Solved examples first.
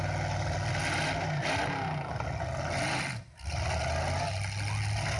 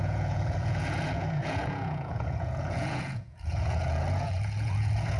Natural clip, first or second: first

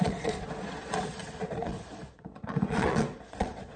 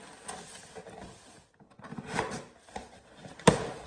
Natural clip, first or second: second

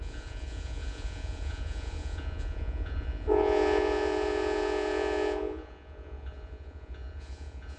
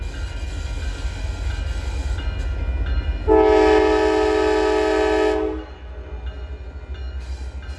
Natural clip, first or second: second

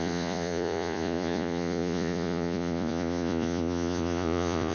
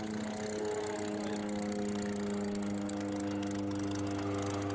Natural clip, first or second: second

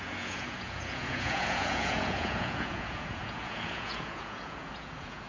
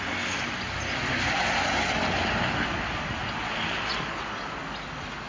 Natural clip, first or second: second